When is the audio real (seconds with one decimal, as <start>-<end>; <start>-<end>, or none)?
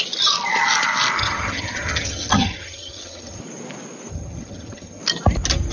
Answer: 0.0-1.2; 3.4-4.1; 5.0-5.7